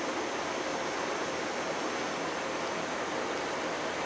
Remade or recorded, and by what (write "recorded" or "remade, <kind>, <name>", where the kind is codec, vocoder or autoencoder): recorded